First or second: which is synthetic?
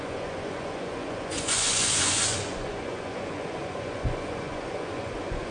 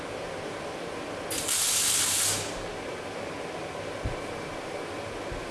first